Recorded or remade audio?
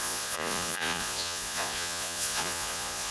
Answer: remade